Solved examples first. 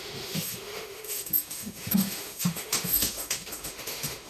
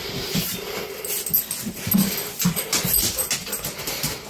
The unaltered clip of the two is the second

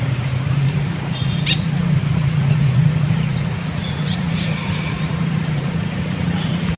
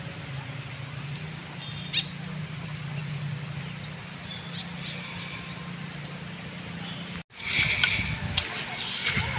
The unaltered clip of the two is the second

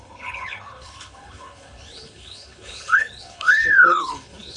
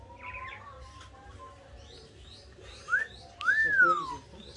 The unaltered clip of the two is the second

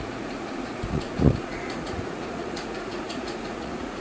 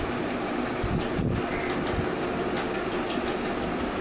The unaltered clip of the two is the second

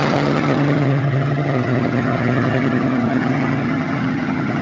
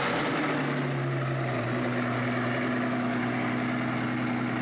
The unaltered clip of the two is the second